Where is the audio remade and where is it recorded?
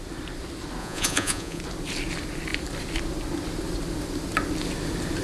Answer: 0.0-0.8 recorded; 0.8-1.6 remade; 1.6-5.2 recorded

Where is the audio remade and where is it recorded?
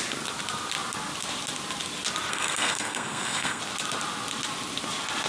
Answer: 0.0-2.3 recorded; 2.3-3.6 remade; 3.6-5.3 recorded